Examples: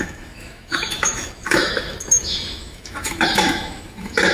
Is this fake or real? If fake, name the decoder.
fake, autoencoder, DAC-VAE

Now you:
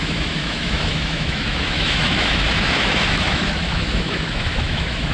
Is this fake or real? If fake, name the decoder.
fake, autoencoder, DAC-VAE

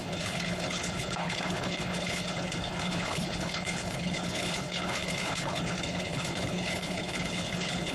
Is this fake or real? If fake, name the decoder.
fake, codec, HILCodec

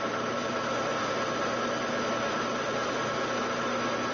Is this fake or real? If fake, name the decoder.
real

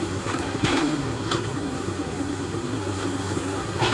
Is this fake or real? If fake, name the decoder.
fake, codec, SNAC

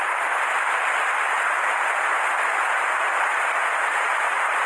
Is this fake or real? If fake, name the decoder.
real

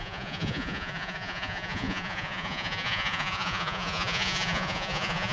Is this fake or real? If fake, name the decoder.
fake, vocoder, Vocos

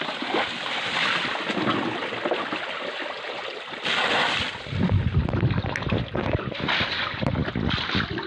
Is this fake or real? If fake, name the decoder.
real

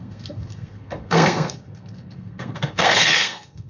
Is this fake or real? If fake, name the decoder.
fake, codec, SNAC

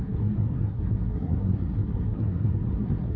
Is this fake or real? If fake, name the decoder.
fake, codec, SNAC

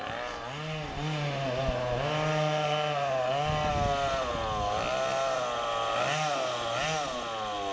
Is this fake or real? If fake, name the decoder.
real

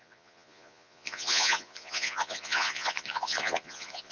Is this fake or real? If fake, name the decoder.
fake, vocoder, Vocos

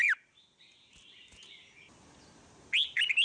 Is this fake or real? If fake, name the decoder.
real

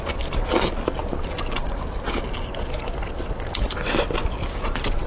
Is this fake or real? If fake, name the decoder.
real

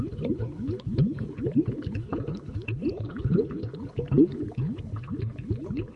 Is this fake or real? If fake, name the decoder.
fake, codec, HILCodec